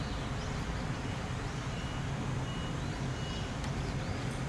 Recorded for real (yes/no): yes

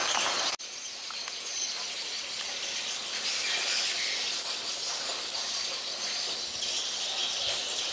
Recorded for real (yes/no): yes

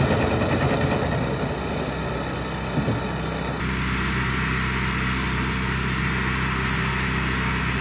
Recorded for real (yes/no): yes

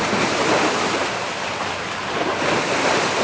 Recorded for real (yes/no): no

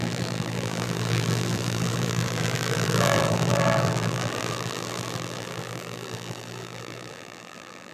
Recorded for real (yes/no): no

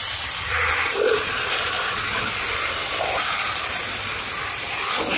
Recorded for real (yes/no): no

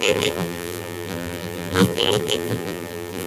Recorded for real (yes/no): no